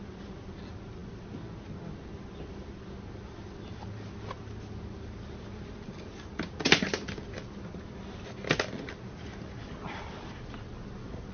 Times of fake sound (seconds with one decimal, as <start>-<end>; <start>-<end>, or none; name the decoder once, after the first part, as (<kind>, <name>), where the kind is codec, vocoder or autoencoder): none